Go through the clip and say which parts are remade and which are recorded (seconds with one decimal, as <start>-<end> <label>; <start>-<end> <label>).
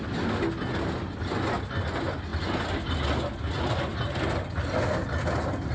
0.0-5.7 recorded